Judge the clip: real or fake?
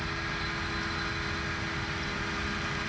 real